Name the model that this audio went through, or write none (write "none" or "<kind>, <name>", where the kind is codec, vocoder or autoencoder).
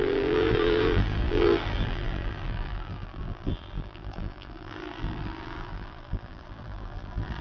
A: vocoder, BigVGAN v2